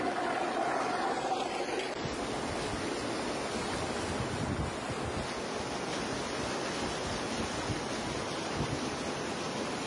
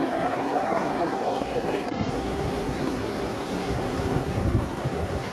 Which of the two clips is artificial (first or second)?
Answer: second